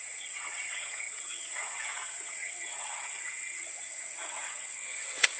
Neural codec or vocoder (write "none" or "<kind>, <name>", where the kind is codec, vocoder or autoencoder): vocoder, WaveNeXt